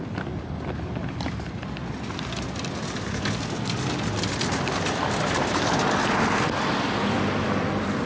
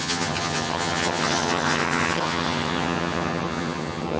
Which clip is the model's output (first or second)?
second